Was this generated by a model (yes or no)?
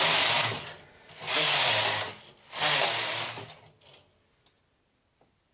no